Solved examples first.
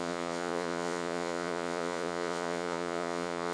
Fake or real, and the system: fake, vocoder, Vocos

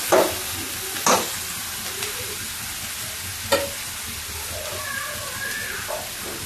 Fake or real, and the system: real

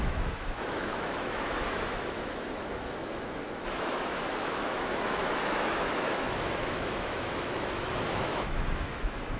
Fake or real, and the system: fake, autoencoder, DAC-VAE